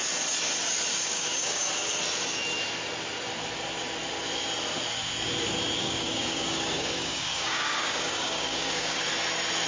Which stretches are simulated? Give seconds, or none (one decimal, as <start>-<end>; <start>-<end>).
0.9-1.6; 5.8-9.1